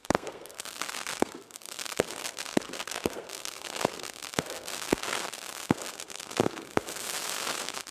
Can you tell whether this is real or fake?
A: fake